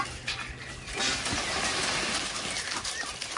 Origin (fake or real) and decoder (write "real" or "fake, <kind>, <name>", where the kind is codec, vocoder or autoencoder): real